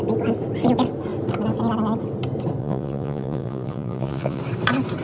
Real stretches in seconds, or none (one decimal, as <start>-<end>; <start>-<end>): 0.0-2.6; 4.4-5.0